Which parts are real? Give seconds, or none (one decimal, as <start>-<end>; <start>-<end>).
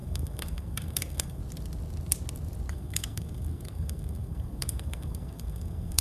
1.4-2.7